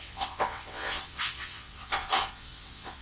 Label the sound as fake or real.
fake